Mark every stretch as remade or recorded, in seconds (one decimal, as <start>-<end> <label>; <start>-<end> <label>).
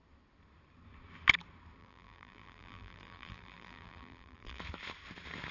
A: 0.0-1.8 recorded; 1.8-4.6 remade; 4.6-5.5 recorded